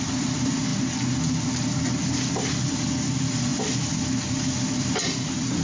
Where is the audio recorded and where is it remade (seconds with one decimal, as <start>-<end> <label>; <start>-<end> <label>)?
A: 0.0-0.7 remade; 0.7-2.0 recorded; 2.0-3.5 remade; 3.5-4.0 recorded; 4.0-5.6 remade